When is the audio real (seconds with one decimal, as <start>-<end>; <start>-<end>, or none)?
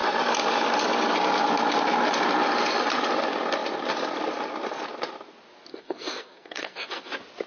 0.0-5.7; 7.1-7.5